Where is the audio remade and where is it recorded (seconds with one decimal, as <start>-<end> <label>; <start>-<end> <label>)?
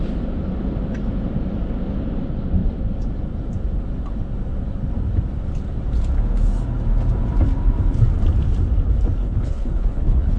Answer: 0.0-9.2 recorded; 9.2-10.4 remade